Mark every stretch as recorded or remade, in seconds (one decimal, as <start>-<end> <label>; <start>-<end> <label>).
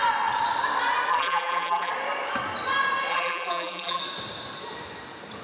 0.0-1.1 recorded; 1.1-1.9 remade; 1.9-3.1 recorded; 3.1-4.0 remade; 4.0-5.4 recorded